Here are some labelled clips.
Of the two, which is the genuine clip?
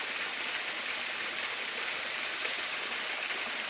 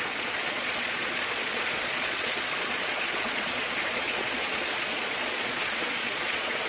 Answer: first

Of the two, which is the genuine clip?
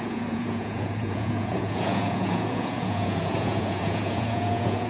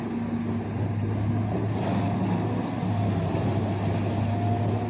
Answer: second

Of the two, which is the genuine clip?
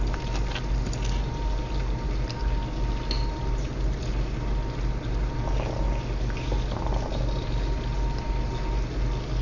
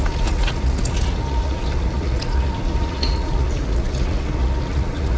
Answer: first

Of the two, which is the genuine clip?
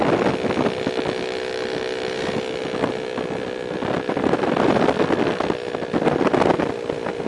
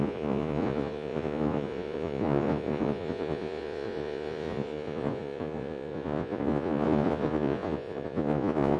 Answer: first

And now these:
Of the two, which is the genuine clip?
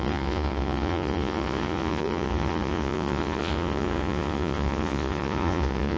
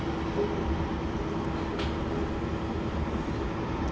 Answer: second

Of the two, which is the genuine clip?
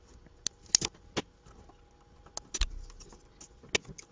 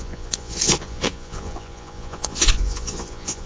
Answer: first